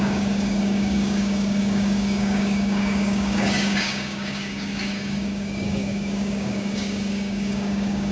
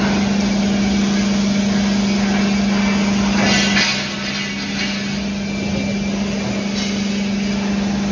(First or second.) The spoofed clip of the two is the first